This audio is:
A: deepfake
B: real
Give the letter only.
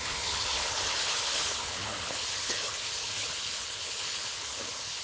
A